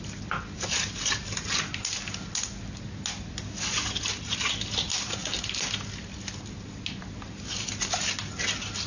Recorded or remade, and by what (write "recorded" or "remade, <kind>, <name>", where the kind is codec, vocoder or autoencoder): recorded